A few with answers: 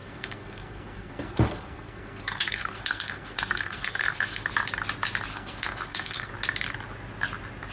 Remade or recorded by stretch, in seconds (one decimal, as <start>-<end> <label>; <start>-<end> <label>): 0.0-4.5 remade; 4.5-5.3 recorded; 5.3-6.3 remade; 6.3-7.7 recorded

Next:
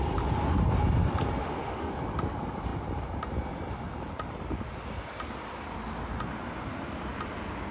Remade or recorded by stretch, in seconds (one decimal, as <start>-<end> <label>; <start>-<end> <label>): 0.0-1.4 recorded; 1.4-1.9 remade; 1.9-7.7 recorded

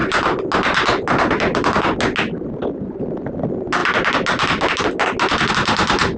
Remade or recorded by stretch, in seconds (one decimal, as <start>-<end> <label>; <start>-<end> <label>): 0.0-6.2 recorded

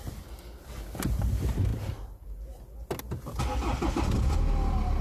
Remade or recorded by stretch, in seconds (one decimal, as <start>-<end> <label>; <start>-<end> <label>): 0.0-5.0 recorded

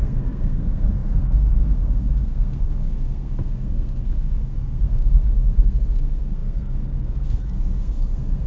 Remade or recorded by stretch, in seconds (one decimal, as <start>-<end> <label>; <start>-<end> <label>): 0.0-8.5 remade

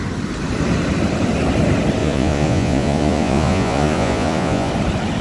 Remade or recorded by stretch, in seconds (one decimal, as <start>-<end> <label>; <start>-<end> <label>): 0.0-2.0 recorded; 2.0-4.7 remade; 4.7-5.2 recorded